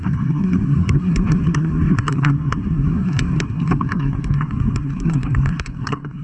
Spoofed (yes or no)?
yes